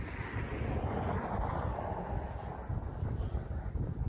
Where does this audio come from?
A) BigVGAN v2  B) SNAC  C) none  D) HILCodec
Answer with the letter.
C